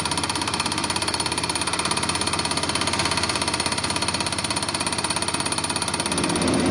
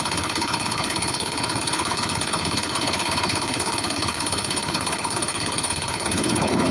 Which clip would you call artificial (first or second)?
second